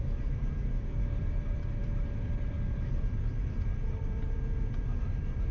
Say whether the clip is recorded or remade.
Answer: remade